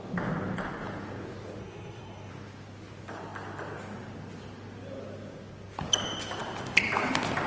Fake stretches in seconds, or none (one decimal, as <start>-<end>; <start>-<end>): 1.6-2.3